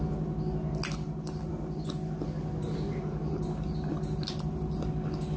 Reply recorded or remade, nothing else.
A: recorded